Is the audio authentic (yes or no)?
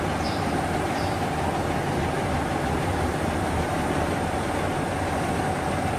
yes